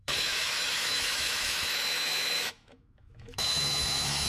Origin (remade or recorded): remade